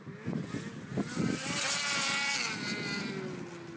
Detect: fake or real real